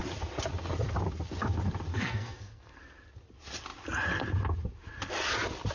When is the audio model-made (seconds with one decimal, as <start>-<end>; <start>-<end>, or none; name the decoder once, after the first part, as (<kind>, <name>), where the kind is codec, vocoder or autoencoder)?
1.9-2.8 (codec, SNAC)